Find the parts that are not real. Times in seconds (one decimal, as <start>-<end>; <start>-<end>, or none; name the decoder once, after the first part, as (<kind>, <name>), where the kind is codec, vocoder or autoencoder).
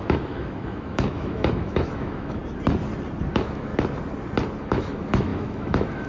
0.0-2.4 (autoencoder, DAC-VAE); 3.3-3.7; 4.6-6.1